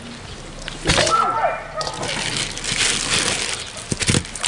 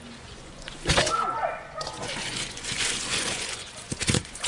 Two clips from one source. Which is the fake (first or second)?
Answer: second